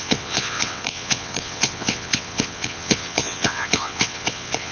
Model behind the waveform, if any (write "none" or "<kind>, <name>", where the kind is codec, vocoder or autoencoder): vocoder, WaveNeXt